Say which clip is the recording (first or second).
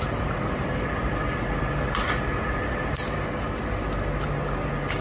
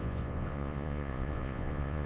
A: first